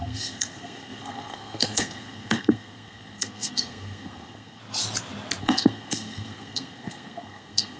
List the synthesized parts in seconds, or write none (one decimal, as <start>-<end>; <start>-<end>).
0.0-4.6; 5.4-7.8